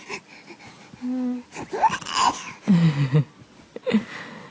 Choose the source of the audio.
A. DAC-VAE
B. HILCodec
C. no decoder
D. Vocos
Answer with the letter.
C